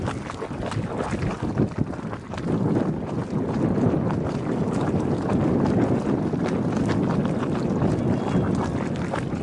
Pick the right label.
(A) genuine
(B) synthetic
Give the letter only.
A